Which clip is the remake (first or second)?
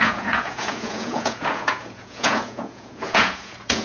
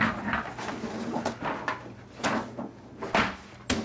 first